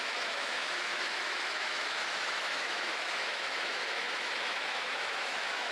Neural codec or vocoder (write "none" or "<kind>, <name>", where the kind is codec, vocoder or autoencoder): autoencoder, DAC-VAE